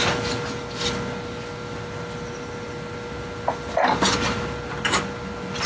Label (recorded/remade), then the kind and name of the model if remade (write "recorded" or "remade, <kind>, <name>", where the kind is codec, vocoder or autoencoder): recorded